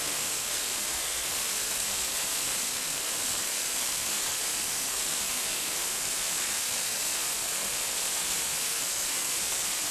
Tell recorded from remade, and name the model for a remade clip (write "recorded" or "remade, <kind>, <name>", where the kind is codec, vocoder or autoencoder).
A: remade, codec, SNAC